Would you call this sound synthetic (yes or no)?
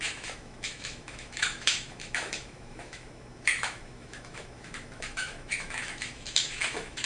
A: yes